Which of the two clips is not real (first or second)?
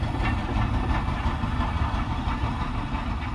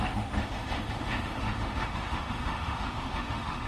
second